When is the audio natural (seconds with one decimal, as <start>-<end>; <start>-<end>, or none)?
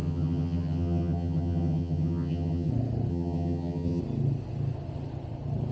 2.7-3.1; 4.0-5.7